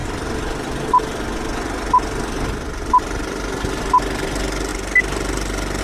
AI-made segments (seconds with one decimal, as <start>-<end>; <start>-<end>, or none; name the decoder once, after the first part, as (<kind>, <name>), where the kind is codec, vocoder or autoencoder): 0.0-0.9 (vocoder, BigVGAN v2)